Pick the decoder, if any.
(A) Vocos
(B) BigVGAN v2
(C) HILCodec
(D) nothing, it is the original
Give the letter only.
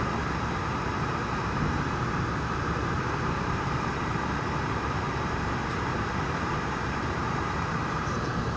B